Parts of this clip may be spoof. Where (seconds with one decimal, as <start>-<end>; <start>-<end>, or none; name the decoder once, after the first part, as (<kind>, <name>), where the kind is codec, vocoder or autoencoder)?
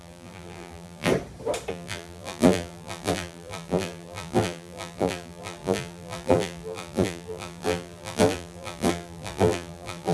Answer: 0.0-1.1 (vocoder, BigVGAN v2); 1.7-10.1